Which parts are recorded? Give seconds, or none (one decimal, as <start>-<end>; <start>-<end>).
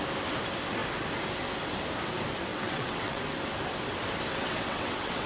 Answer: 0.0-2.5; 3.2-4.3